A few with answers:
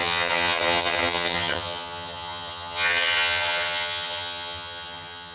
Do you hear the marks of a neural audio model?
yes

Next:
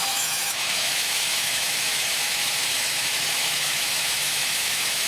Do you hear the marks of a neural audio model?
yes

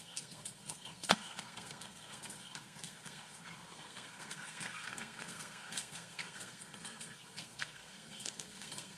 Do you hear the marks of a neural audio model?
yes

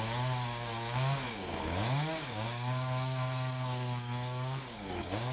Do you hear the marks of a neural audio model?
yes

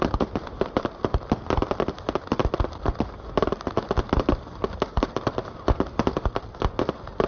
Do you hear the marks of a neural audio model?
no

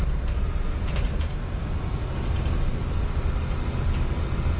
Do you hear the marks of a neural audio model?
no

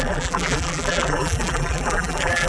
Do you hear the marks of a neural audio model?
yes